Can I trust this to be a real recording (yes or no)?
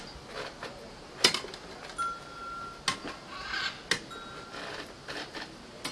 yes